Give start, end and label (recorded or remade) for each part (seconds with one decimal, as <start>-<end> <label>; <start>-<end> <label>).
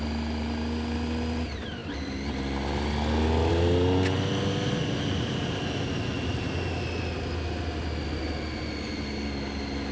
0.0-9.9 recorded